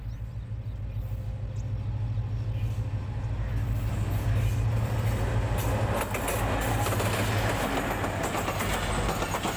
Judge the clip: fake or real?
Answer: real